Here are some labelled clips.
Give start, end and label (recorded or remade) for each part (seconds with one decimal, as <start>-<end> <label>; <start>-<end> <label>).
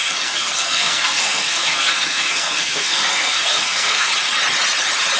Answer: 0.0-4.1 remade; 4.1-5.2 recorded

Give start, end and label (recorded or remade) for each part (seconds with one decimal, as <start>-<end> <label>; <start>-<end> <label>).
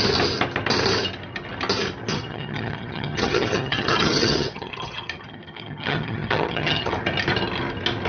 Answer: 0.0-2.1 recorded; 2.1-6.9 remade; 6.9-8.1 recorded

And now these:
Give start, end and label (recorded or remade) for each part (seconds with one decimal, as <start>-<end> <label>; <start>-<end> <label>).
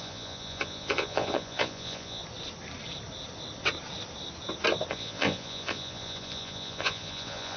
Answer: 0.0-2.2 remade; 2.2-4.9 recorded; 4.9-7.6 remade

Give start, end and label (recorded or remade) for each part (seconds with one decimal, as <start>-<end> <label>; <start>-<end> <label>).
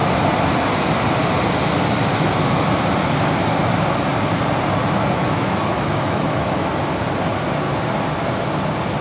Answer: 0.0-5.2 recorded; 5.2-6.7 remade; 6.7-9.0 recorded